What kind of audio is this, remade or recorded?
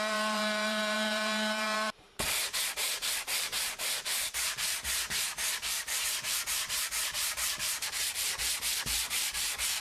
remade